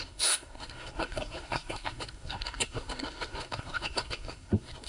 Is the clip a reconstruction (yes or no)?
yes